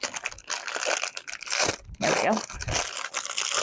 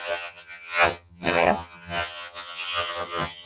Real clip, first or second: first